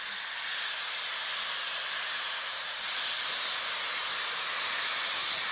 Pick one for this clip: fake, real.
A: real